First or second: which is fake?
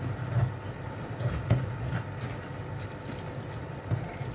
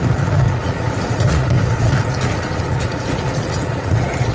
second